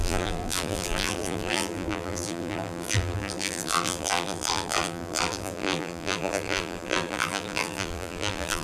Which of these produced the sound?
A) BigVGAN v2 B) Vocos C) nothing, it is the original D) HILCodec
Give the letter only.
A